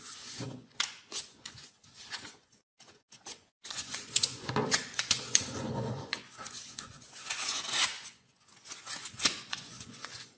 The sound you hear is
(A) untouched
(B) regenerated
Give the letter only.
B